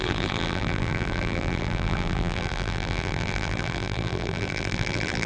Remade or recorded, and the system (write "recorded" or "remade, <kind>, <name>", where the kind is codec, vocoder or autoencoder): remade, vocoder, BigVGAN v2